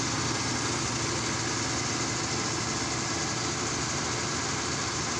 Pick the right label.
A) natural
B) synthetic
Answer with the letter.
A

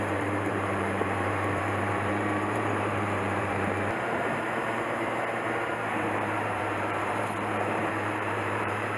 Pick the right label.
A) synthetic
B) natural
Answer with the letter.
A